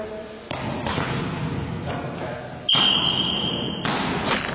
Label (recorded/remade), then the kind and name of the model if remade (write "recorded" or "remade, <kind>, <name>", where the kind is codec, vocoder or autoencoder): recorded